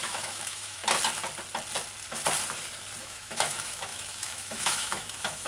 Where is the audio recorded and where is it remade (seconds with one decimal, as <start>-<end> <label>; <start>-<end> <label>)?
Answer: 0.0-0.8 remade; 0.8-3.0 recorded; 3.0-5.5 remade